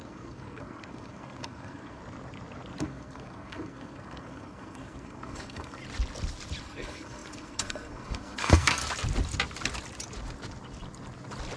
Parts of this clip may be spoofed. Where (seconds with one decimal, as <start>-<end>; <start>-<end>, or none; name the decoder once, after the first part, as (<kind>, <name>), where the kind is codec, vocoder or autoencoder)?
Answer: 0.0-2.0 (codec, SNAC); 2.8-5.8; 6.6-8.8